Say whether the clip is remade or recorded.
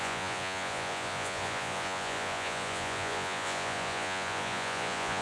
remade